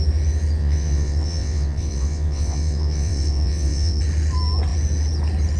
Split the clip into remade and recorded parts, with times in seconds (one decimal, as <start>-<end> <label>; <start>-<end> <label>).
0.0-0.6 recorded; 0.6-4.0 remade; 4.0-5.6 recorded